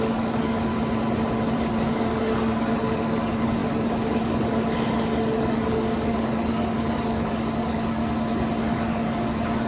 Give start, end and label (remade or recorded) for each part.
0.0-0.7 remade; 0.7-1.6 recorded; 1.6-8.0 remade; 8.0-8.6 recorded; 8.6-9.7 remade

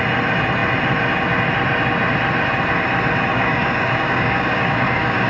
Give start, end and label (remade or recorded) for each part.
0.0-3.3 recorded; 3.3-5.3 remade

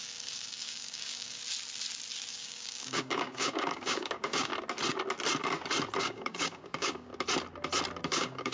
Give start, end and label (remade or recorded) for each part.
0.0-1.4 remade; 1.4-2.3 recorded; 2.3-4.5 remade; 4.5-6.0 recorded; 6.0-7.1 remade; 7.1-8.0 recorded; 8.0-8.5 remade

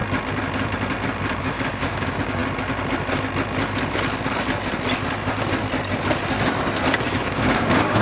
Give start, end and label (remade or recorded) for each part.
0.0-1.4 recorded; 1.4-2.4 remade; 2.4-7.2 recorded; 7.2-8.0 remade

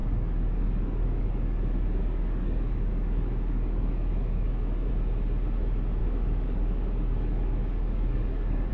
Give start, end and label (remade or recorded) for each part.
0.0-4.9 remade; 4.9-6.0 recorded; 6.0-8.7 remade

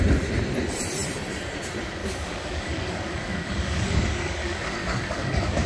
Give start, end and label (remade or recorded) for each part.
0.0-2.0 recorded; 2.0-5.7 remade